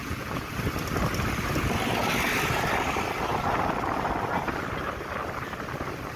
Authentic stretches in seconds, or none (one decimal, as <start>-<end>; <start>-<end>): 0.5-6.2